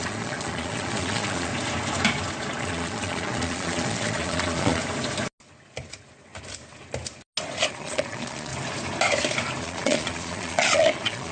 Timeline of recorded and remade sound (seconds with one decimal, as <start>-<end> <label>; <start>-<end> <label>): 0.0-1.5 remade; 1.5-2.6 recorded; 2.6-4.8 remade; 4.8-7.7 recorded; 7.7-8.5 remade; 8.5-9.6 recorded; 9.6-11.3 remade